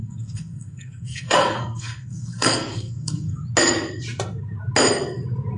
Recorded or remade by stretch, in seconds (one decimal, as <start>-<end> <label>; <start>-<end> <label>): 0.0-3.4 remade; 3.4-5.6 recorded